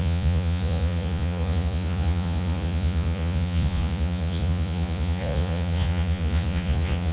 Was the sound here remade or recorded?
remade